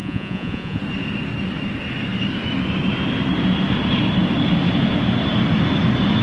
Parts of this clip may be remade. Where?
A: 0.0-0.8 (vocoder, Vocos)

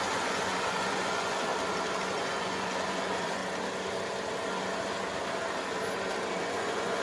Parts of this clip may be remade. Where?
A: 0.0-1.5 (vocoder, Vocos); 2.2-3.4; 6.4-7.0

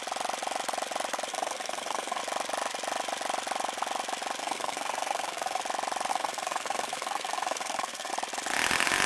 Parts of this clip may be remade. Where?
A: 1.3-2.2 (codec, SNAC); 4.4-5.6; 6.1-8.1

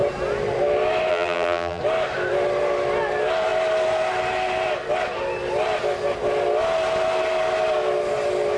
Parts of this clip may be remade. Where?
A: 1.1-1.8 (vocoder, BigVGAN v2)

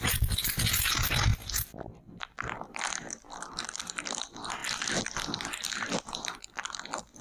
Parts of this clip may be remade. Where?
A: 0.0-1.3 (vocoder, BigVGAN v2); 2.2-7.2

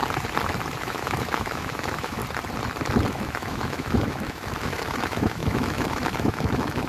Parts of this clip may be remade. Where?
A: 0.8-2.2 (autoencoder, DAC-VAE); 3.1-6.9

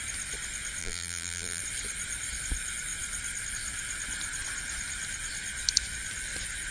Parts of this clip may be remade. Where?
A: 0.8-1.6 (vocoder, BigVGAN v2)